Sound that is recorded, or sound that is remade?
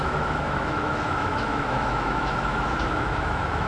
remade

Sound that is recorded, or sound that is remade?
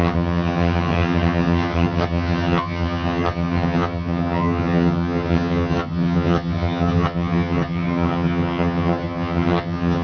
remade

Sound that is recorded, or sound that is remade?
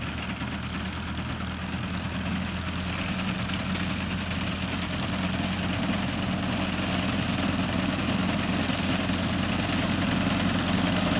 recorded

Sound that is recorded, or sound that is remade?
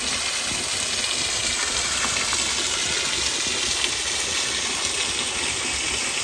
recorded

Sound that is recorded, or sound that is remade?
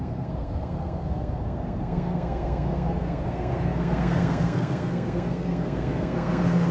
remade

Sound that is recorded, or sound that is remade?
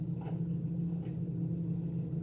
recorded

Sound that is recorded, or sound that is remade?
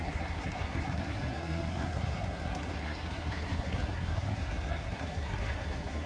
remade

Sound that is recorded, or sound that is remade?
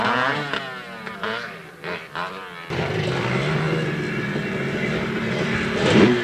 recorded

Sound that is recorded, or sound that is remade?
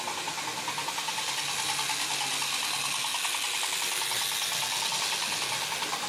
recorded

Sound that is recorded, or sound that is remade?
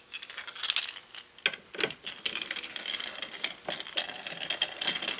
recorded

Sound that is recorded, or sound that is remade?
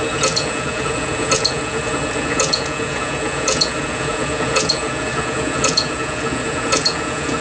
remade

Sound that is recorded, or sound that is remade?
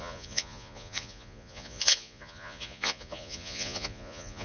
remade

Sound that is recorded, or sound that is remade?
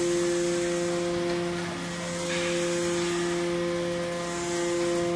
recorded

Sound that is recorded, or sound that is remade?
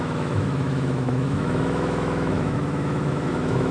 remade